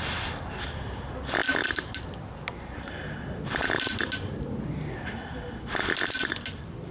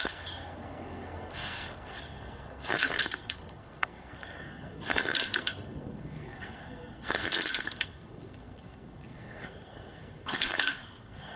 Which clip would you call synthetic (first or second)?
second